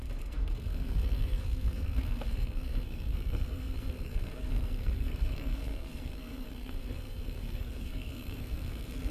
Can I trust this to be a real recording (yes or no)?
no